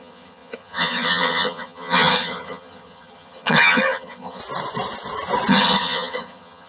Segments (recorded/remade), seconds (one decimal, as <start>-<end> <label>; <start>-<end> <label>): 0.0-4.4 remade; 4.4-5.5 recorded; 5.5-6.7 remade